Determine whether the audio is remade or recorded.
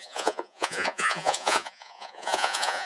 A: remade